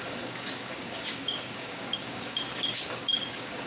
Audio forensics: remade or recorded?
remade